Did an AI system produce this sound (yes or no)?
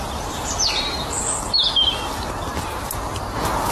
no